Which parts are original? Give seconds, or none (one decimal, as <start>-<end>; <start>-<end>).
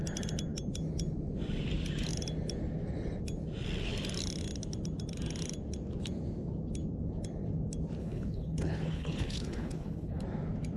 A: 0.0-8.0; 10.2-10.8